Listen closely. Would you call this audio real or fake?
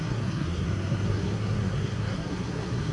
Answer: fake